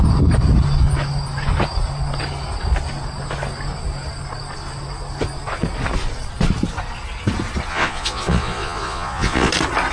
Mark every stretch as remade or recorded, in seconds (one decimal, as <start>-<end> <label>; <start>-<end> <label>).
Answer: 0.0-7.7 recorded; 7.7-9.5 remade; 9.5-9.9 recorded